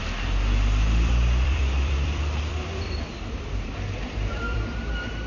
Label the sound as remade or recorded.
remade